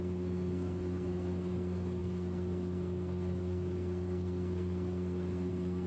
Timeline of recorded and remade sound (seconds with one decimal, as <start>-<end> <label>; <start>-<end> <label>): 0.0-5.9 remade